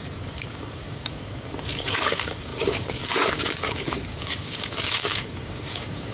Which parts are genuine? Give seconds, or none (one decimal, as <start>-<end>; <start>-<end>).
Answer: none

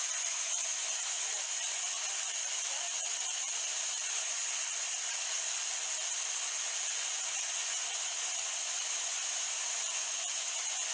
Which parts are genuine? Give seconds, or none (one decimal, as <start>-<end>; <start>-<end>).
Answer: 2.0-2.8; 4.4-7.1